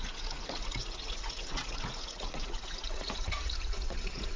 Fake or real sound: fake